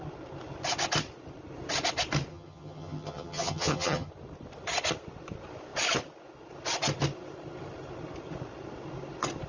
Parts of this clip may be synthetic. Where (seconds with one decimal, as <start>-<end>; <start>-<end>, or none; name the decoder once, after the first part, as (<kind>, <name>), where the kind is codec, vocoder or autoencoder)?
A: 2.3-4.1 (vocoder, HiFi-GAN)